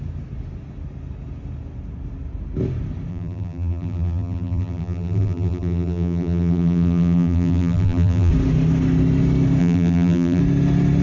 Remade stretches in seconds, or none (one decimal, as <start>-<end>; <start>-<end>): 3.1-8.3; 9.6-10.4

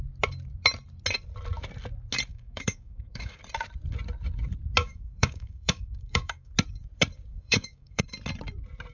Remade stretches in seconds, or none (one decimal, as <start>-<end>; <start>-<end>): 2.3-3.4; 4.8-6.5; 7.3-8.0

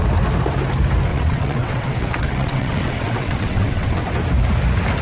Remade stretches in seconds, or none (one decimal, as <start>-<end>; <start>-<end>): 1.1-4.1

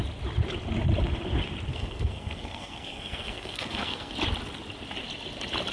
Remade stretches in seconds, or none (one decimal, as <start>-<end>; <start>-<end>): 1.7-4.1

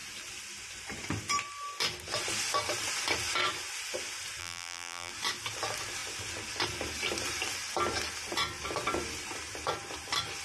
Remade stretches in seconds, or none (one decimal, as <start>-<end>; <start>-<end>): 4.4-5.1

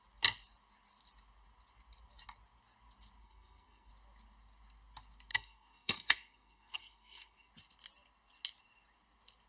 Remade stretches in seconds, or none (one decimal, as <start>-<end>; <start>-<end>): 3.2-3.9; 5.3-7.5

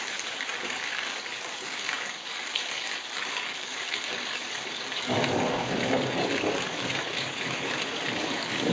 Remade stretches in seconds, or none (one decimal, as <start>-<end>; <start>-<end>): 0.0-8.7